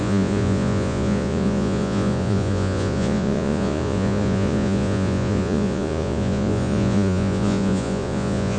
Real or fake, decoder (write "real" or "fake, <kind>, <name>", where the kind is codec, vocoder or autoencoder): fake, vocoder, Vocos